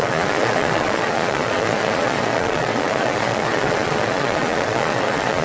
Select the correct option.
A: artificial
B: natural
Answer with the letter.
A